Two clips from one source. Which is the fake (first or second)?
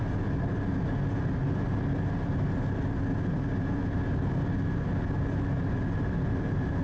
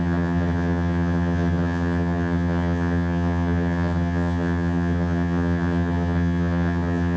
second